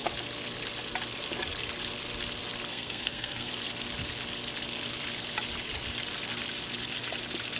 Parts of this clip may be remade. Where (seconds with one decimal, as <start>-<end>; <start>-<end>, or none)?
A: 2.7-3.5